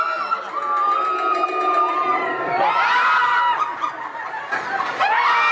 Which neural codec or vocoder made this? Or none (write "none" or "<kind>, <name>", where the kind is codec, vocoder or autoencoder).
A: none